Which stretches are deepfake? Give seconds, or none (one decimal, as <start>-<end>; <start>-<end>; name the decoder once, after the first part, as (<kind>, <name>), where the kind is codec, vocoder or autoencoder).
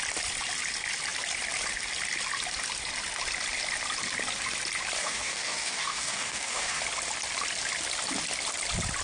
5.0-6.8 (codec, DAC)